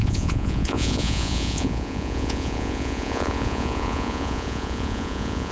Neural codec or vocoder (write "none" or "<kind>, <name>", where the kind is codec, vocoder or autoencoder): vocoder, Vocos